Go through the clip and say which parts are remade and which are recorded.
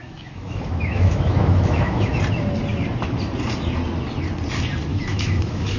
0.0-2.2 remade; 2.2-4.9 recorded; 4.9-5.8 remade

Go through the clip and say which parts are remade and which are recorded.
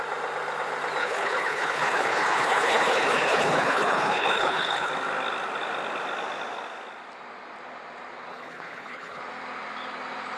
0.0-1.0 recorded; 1.0-4.9 remade; 4.9-8.3 recorded; 8.3-9.2 remade; 9.2-10.4 recorded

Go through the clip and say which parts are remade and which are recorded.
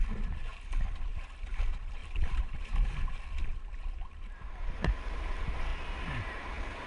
0.0-2.0 recorded; 2.0-3.2 remade; 3.2-6.9 recorded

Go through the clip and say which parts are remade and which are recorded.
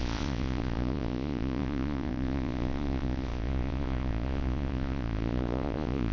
0.0-6.1 remade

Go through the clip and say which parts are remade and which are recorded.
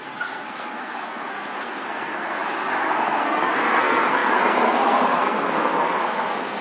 0.0-6.6 remade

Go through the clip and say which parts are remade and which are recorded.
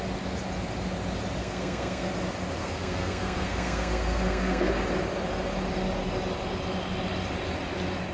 0.0-1.4 recorded; 1.4-2.1 remade; 2.1-2.6 recorded; 2.6-4.7 remade; 4.7-8.1 recorded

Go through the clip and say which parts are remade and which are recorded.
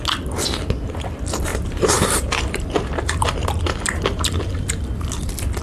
0.0-1.5 recorded; 1.5-4.7 remade; 4.7-5.6 recorded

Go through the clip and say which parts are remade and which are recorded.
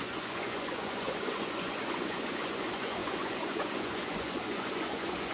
0.0-5.3 remade